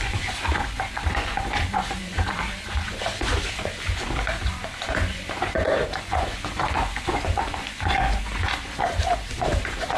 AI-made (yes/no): yes